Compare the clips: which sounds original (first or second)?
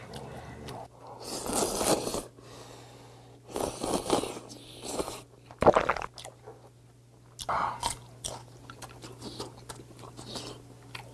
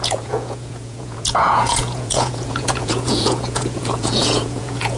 first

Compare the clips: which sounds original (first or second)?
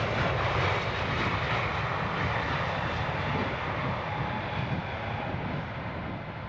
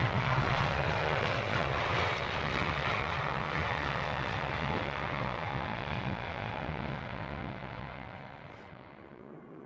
first